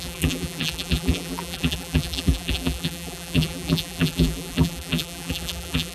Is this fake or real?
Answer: fake